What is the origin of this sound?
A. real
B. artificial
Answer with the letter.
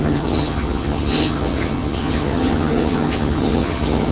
B